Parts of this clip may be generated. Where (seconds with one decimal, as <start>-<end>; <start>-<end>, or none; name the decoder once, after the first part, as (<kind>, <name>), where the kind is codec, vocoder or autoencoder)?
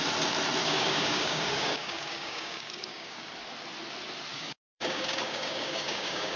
0.6-3.3 (codec, DAC); 4.3-6.4